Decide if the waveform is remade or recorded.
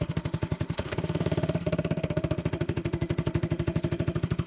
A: remade